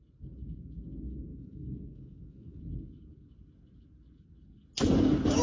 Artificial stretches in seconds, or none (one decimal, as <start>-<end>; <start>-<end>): 1.3-2.6